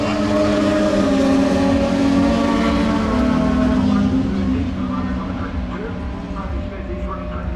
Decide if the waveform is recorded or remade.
recorded